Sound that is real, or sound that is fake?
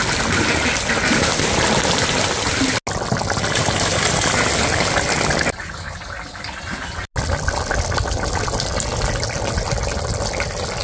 real